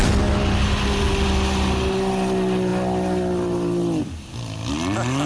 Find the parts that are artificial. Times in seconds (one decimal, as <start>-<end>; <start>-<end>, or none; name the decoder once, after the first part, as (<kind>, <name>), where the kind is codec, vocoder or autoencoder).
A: none